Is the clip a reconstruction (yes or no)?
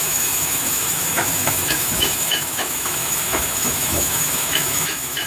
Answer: yes